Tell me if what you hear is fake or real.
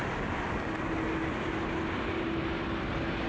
real